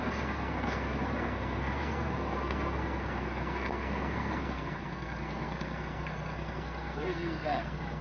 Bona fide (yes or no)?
no